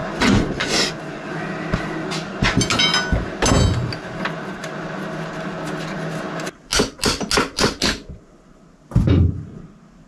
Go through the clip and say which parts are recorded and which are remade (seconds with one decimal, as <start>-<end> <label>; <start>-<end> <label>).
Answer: 0.0-1.3 remade; 1.3-10.1 recorded